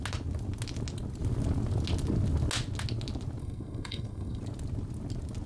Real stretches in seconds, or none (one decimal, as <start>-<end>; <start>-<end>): 0.0-3.4; 4.4-5.5